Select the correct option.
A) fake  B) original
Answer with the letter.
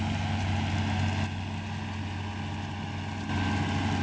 B